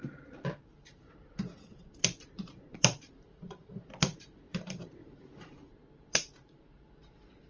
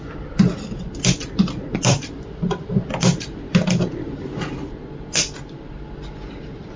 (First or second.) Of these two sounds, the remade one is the first